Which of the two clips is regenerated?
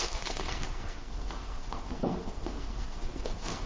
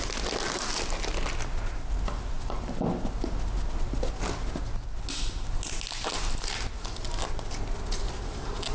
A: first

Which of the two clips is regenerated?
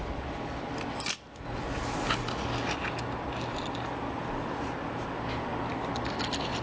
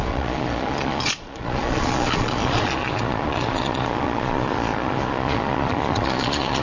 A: second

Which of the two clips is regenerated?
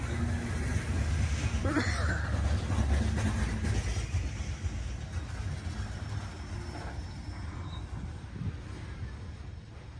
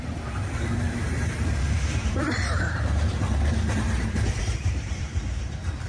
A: second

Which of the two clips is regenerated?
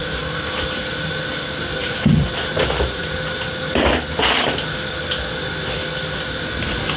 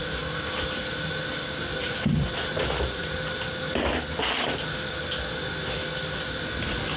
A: first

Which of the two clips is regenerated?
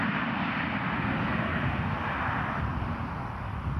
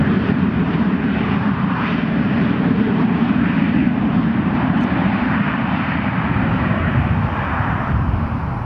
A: second